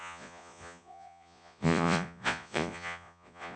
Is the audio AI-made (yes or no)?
yes